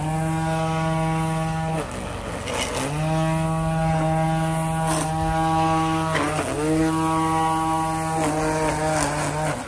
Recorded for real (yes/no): yes